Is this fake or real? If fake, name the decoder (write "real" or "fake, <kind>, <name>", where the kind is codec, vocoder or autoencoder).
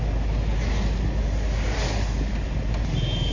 real